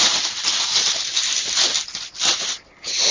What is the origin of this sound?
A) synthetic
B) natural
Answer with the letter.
B